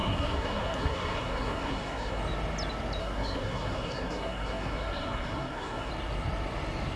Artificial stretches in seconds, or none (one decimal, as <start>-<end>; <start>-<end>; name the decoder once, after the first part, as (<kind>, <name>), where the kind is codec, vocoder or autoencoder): 0.0-2.2 (codec, SNAC); 3.0-5.9